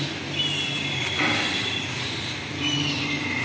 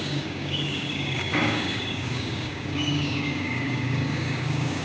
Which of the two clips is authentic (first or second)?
first